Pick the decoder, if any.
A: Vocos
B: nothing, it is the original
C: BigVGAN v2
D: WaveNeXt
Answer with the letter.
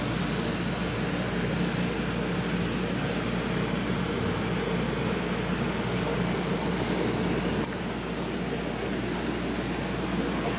B